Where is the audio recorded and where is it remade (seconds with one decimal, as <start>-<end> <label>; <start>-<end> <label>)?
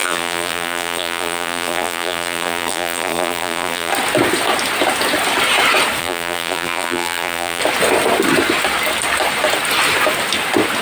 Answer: 0.0-3.9 remade; 3.9-6.0 recorded; 6.0-7.6 remade; 7.6-10.8 recorded